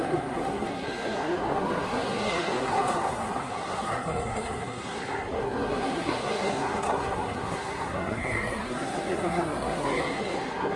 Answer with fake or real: fake